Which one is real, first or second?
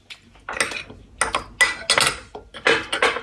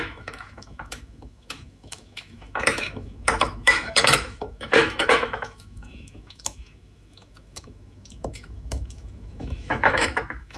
first